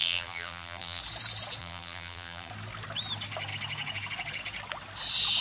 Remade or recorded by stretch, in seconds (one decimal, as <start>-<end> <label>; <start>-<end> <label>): 0.0-1.0 remade; 1.0-1.6 recorded; 1.6-2.5 remade; 2.5-5.4 recorded